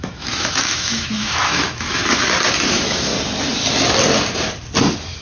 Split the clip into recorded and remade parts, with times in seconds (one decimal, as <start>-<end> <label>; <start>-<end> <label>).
0.0-2.0 remade; 2.0-2.7 recorded; 2.7-3.1 remade; 3.1-5.2 recorded